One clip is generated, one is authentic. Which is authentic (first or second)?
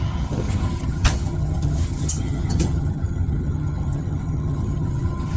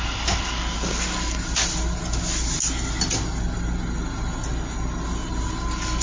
second